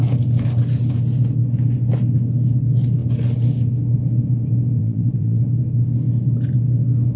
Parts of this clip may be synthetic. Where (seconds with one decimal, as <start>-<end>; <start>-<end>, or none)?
4.8-5.4